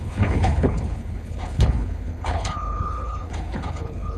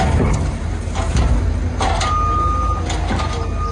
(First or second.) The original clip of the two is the second